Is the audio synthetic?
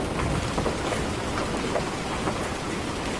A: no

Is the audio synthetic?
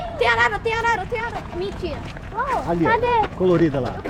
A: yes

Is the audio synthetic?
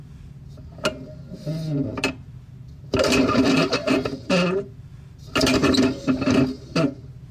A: no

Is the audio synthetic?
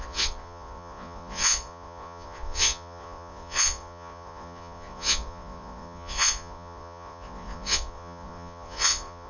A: yes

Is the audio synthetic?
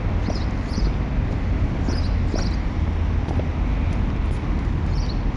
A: no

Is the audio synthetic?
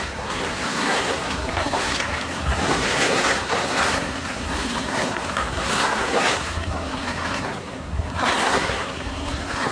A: yes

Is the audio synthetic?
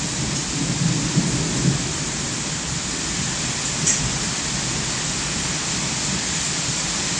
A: no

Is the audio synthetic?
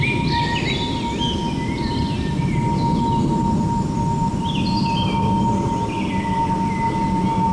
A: no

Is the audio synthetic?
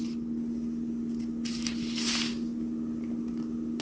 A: no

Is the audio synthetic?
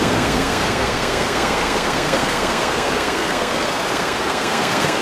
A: yes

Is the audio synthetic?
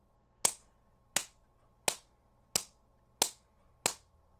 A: no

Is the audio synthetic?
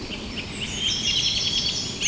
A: no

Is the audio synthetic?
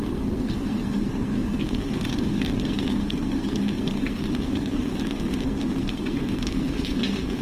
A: yes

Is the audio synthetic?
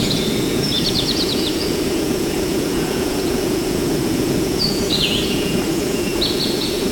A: yes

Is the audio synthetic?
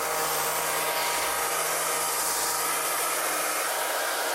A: no